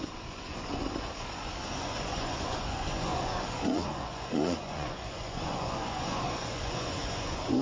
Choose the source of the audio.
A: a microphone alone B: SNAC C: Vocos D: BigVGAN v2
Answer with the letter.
C